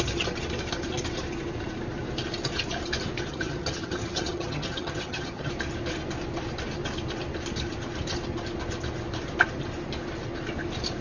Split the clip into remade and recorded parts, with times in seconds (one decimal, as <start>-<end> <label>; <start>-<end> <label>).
0.0-3.3 recorded; 3.3-5.5 remade; 5.5-11.0 recorded